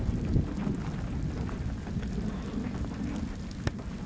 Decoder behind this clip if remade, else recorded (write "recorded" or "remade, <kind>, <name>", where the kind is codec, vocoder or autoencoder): recorded